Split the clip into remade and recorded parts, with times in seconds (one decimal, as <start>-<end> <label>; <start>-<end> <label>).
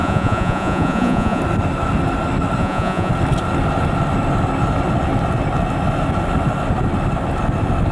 0.0-1.4 remade; 1.4-2.6 recorded; 2.6-3.1 remade; 3.1-7.9 recorded